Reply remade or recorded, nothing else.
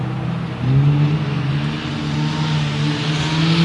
recorded